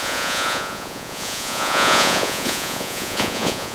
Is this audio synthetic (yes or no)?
yes